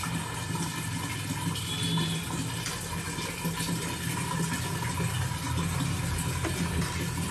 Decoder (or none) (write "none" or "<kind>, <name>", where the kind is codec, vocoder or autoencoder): none